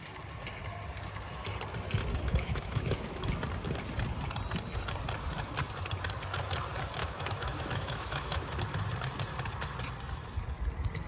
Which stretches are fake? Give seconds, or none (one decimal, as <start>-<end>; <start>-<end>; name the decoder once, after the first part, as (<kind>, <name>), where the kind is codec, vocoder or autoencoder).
2.1-3.3 (autoencoder, DAC-VAE); 7.0-8.6